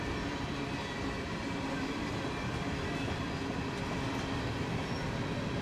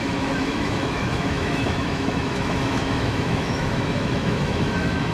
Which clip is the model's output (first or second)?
second